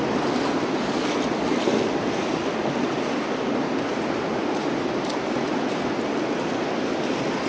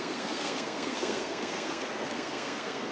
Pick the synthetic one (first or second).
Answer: second